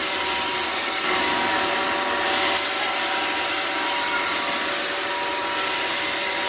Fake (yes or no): no